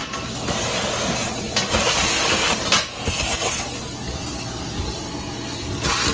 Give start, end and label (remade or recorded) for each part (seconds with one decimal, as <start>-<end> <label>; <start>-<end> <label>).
0.0-6.1 recorded